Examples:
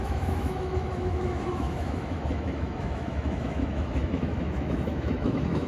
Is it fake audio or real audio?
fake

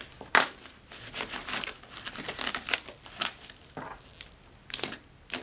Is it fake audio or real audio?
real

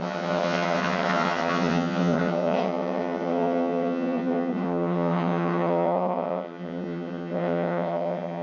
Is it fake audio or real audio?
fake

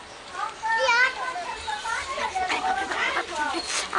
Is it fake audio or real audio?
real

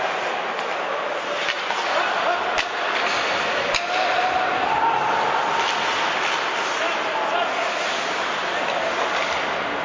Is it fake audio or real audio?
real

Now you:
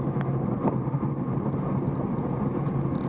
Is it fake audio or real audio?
real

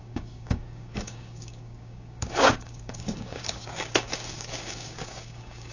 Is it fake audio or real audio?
fake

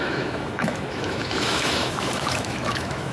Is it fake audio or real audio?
fake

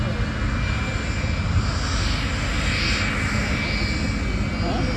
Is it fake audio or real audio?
real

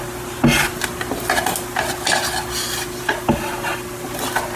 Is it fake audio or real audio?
real